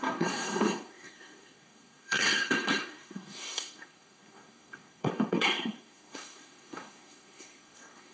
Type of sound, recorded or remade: remade